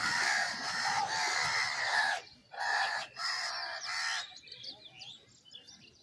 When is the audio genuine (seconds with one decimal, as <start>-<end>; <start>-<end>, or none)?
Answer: 0.0-0.4; 1.0-2.4; 3.5-6.0